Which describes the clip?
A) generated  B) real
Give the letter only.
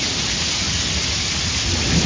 B